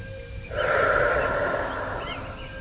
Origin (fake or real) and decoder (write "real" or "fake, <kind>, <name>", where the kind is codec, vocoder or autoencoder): real